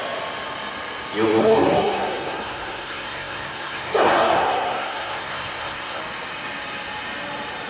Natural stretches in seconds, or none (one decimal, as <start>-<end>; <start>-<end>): 0.0-1.4; 6.0-7.7